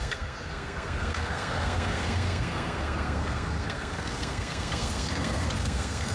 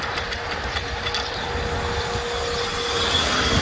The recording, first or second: second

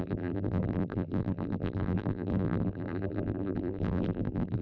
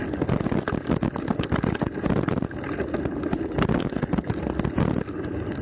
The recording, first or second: second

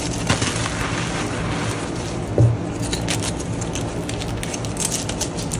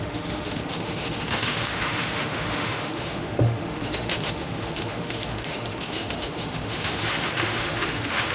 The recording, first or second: first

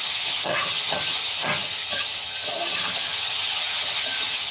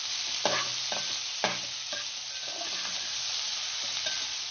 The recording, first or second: second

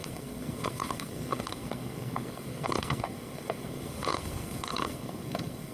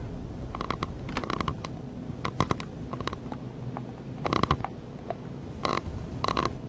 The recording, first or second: second